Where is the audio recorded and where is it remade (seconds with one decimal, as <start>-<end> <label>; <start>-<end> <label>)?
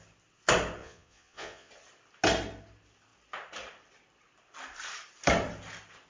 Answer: 0.0-0.8 recorded; 0.8-1.7 remade; 1.7-6.1 recorded